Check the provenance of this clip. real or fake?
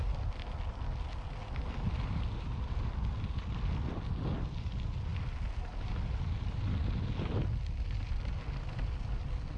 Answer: real